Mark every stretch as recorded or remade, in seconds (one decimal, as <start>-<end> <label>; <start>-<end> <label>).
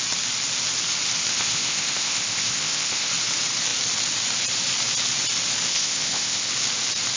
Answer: 0.0-1.3 recorded; 1.3-3.1 remade; 3.1-5.7 recorded; 5.7-6.5 remade; 6.5-7.2 recorded